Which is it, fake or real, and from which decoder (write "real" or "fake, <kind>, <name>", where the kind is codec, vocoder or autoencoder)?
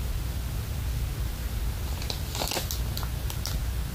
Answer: real